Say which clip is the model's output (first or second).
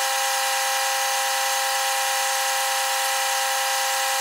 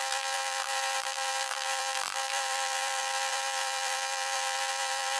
second